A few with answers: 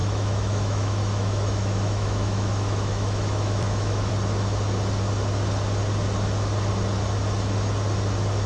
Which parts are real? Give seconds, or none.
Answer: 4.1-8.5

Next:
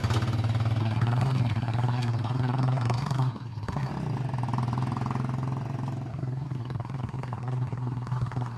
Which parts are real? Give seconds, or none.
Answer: 0.0-0.8; 3.9-6.1

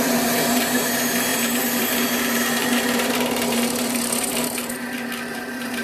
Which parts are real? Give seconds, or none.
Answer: none

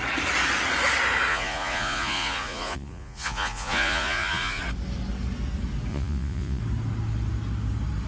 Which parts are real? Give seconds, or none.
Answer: 0.0-1.3; 4.6-5.9; 6.6-8.1

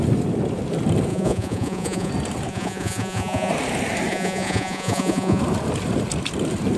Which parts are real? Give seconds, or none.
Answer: 0.0-1.1; 2.1-2.5; 3.5-4.1; 5.4-6.8

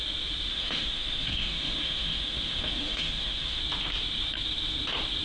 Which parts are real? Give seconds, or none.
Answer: 0.0-0.5; 3.6-5.2

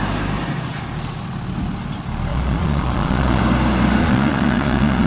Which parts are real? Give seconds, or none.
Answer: 0.0-2.3; 3.4-4.0